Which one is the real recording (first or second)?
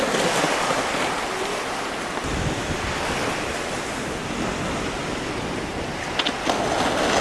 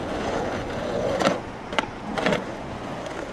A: first